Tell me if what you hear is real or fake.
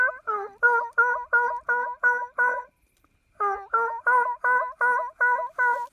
real